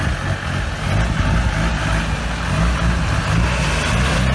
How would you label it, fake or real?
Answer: real